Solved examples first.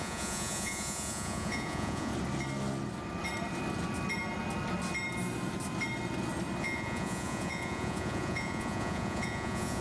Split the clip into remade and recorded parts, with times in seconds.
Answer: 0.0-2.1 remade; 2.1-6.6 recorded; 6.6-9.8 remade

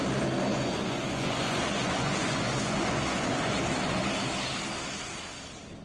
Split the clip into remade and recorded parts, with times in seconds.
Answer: 0.0-0.5 recorded; 0.5-4.0 remade; 4.0-5.8 recorded

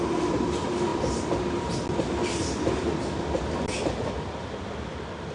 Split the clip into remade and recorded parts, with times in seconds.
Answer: 0.0-5.3 recorded